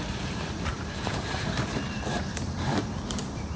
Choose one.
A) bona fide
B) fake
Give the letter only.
B